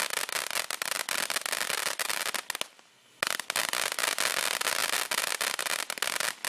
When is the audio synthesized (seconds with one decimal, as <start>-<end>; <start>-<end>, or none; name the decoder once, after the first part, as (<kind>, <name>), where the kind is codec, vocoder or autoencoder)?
none